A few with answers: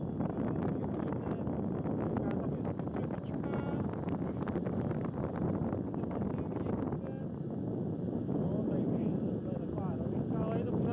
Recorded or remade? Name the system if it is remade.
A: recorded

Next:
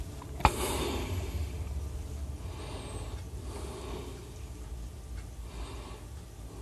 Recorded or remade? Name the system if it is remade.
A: recorded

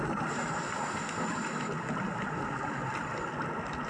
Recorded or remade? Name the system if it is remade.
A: recorded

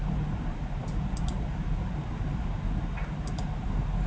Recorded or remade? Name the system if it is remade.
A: recorded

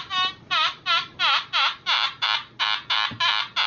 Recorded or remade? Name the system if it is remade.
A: recorded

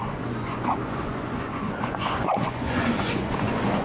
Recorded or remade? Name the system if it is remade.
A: remade, vocoder, Vocos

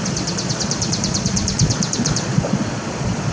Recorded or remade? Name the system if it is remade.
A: remade, vocoder, Vocos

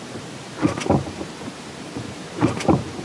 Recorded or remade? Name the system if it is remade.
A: remade, vocoder, BigVGAN v2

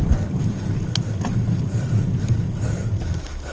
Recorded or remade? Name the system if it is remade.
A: recorded